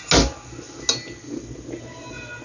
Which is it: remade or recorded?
recorded